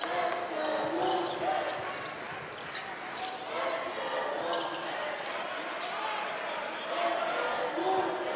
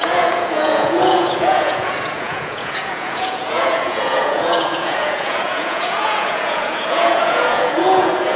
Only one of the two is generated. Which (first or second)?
second